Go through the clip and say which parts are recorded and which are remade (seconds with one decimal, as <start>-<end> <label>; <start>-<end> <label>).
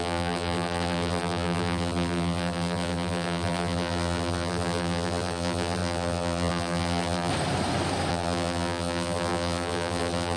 0.0-7.3 remade; 7.3-8.1 recorded; 8.1-10.4 remade